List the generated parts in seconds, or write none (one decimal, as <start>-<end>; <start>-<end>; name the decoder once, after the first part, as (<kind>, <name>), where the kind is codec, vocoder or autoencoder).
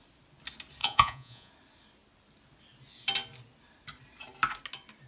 0.8-1.5 (vocoder, Vocos)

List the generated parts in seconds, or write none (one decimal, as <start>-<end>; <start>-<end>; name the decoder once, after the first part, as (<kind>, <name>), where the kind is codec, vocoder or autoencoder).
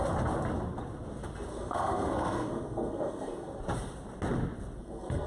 1.5-3.6 (codec, SNAC); 4.8-5.3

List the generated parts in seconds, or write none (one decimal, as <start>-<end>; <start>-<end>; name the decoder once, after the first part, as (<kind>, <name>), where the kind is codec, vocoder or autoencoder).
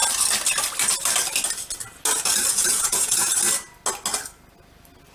2.5-3.3 (vocoder, Vocos)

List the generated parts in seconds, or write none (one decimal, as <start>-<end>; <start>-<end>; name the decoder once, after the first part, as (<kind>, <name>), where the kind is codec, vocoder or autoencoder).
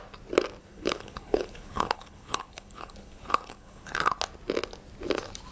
0.6-3.9 (codec, HILCodec)